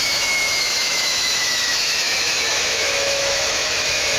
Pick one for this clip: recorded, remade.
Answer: remade